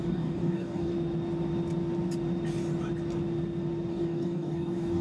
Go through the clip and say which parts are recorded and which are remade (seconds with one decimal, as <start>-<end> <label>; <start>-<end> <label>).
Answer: 0.0-0.9 remade; 0.9-3.9 recorded; 3.9-5.0 remade